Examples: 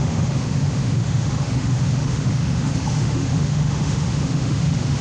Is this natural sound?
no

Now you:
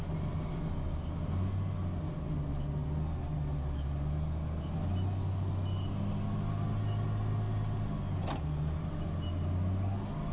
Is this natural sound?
yes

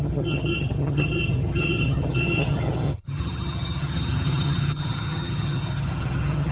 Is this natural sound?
no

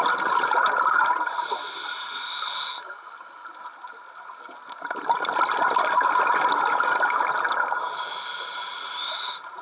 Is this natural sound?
yes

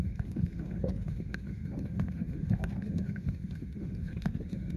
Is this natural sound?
no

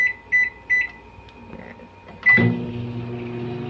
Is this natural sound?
yes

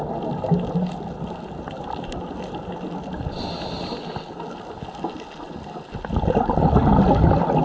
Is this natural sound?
yes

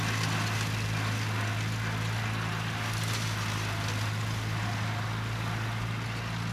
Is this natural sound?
yes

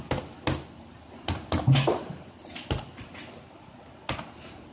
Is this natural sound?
yes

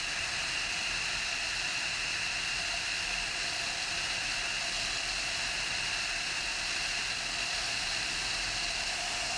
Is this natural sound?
yes